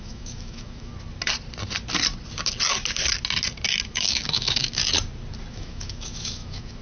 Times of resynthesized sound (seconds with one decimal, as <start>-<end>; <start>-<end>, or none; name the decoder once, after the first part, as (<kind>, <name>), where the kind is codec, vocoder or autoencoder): 0.0-0.9 (autoencoder, DAC-VAE); 3.9-4.8; 5.5-6.8